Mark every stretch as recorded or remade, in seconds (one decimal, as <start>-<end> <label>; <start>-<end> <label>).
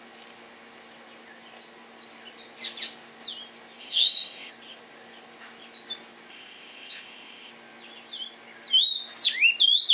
0.0-3.8 recorded; 3.8-4.5 remade; 4.5-6.3 recorded; 6.3-7.5 remade; 7.5-9.9 recorded